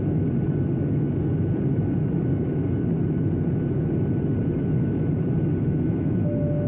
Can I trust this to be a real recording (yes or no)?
yes